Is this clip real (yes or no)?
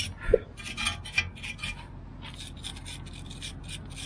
yes